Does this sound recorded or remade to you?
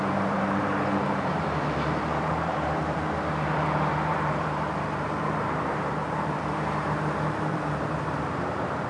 remade